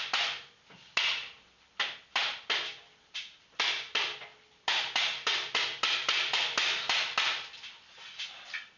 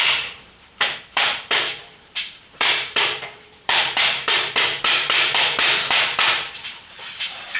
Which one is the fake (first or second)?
second